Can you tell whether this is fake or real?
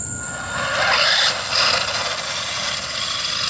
real